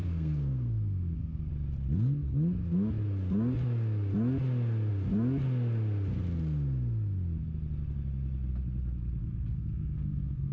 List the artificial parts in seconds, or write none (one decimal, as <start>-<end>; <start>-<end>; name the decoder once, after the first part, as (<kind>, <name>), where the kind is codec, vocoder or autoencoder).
0.0-1.5 (codec, SNAC); 9.2-10.5